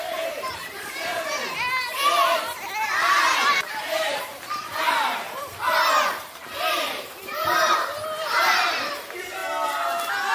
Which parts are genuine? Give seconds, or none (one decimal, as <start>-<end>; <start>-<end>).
4.3-4.8; 9.4-10.3

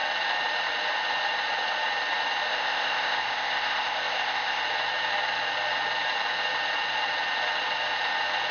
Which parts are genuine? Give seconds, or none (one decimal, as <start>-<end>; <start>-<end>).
0.0-2.5; 4.6-8.5